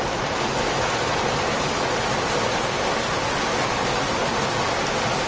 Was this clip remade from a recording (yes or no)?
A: no